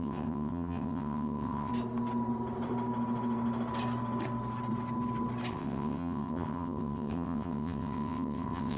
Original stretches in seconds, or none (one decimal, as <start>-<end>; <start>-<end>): 1.7-5.5